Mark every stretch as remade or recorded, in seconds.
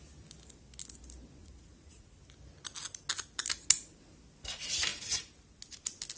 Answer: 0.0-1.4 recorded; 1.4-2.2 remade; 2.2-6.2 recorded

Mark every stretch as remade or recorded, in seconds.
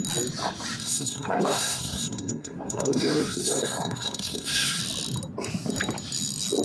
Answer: 0.0-0.8 recorded; 0.8-4.8 remade; 4.8-6.6 recorded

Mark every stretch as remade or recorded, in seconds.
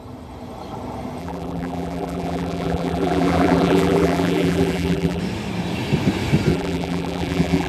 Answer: 0.0-1.2 recorded; 1.2-5.2 remade; 5.2-6.5 recorded; 6.5-7.7 remade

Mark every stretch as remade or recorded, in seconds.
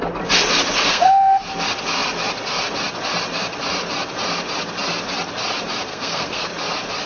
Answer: 0.0-0.9 recorded; 0.9-1.4 remade; 1.4-5.9 recorded; 5.9-6.5 remade; 6.5-7.1 recorded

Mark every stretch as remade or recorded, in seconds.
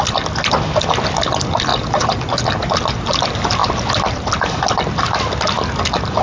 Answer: 0.0-6.2 recorded